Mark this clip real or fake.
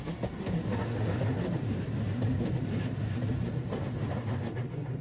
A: real